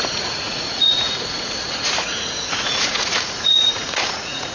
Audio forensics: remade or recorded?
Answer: remade